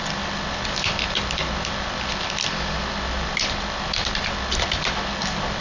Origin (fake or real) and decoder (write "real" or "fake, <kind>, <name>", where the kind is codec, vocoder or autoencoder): fake, vocoder, BigVGAN v2